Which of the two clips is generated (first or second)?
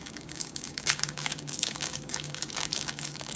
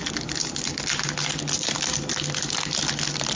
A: first